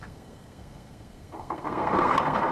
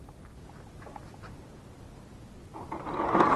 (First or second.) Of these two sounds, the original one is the second